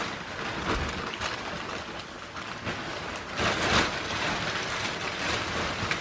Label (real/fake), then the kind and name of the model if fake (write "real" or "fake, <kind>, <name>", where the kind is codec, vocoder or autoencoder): real